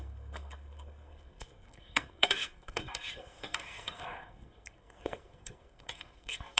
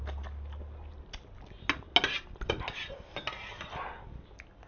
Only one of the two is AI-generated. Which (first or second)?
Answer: first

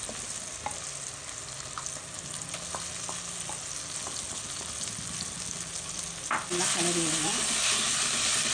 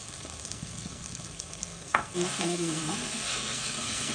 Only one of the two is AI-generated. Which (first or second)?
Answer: second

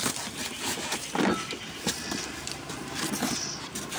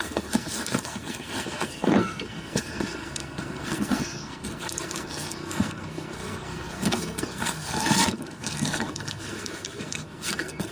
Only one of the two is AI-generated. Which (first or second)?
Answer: second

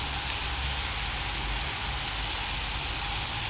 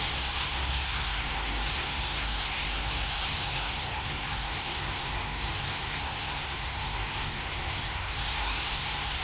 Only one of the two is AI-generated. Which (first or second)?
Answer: second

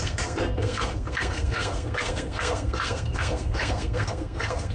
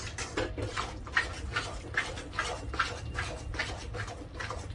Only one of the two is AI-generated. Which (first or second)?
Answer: first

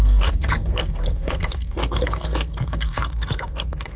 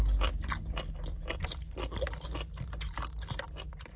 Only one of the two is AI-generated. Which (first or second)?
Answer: first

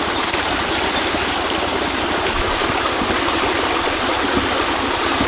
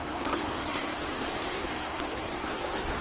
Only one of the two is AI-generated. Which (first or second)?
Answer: second